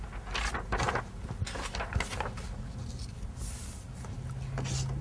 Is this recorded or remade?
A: recorded